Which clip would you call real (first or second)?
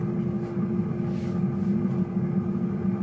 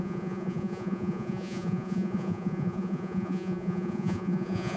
first